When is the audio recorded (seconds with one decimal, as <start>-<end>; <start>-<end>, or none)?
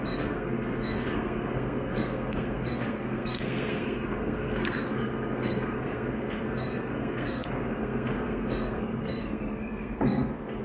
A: none